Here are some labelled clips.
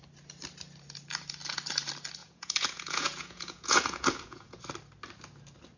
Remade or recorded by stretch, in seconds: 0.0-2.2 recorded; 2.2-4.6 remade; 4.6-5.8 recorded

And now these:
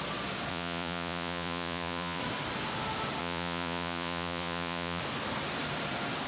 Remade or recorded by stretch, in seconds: 0.0-0.5 recorded; 0.5-2.2 remade; 2.2-3.2 recorded; 3.2-5.0 remade; 5.0-6.3 recorded

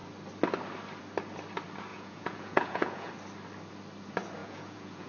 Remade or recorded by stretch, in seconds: 0.0-1.9 recorded; 1.9-3.1 remade; 3.1-4.4 recorded; 4.4-5.1 remade

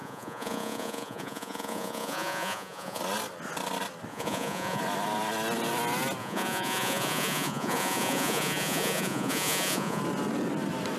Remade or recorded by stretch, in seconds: 0.0-3.0 remade; 3.0-4.1 recorded; 4.1-4.8 remade; 4.8-6.2 recorded; 6.2-10.0 remade; 10.0-11.0 recorded

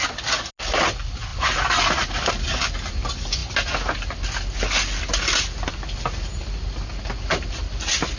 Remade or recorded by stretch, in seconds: 0.0-8.2 recorded

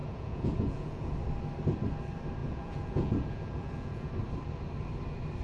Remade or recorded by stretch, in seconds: 0.0-1.1 remade; 1.1-2.4 recorded; 2.4-4.1 remade; 4.1-5.4 recorded

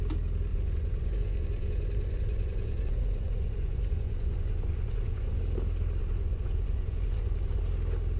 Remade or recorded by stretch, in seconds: 0.0-0.5 recorded; 0.5-5.4 remade; 5.4-6.0 recorded; 6.0-7.6 remade; 7.6-8.2 recorded